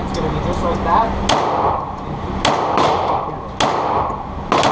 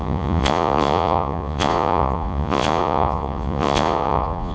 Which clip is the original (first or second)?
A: first